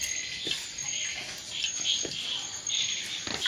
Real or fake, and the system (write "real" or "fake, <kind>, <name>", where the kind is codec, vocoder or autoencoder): real